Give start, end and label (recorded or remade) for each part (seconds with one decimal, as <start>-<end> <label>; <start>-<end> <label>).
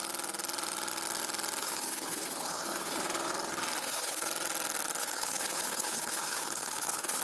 0.0-1.6 recorded; 1.6-3.0 remade; 3.0-3.8 recorded; 3.8-4.3 remade; 4.3-5.0 recorded; 5.0-7.2 remade